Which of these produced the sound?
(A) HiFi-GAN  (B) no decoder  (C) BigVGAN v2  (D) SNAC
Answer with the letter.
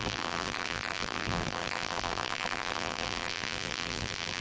C